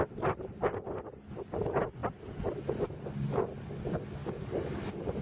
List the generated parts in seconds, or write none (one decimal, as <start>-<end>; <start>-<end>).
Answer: 2.0-3.0; 4.2-5.2